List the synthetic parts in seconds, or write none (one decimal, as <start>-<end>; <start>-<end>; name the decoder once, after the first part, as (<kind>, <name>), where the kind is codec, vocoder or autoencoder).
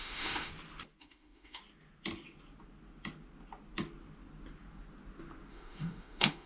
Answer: 0.0-0.5 (autoencoder, DAC-VAE); 1.0-1.6; 5.5-6.5